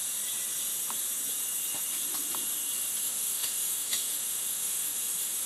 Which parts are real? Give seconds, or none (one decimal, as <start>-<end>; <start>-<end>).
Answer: 0.0-3.0